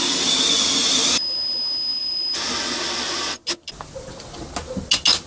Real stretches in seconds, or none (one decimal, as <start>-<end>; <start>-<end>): 0.0-5.3